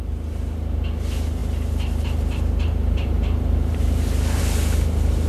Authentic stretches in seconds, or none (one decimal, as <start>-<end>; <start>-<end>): 0.0-1.4; 4.4-5.3